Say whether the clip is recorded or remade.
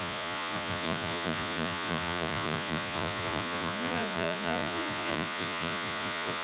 remade